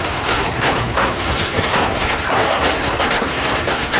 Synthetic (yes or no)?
yes